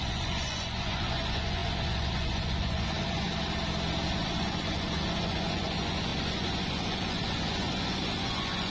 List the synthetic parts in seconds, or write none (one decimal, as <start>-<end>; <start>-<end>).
0.0-3.3; 4.1-8.7